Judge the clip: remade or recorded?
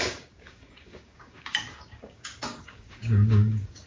remade